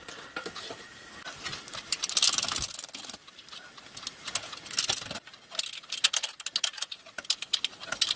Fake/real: real